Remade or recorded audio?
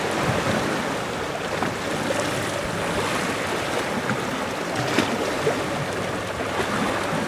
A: recorded